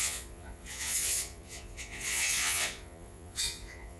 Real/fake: fake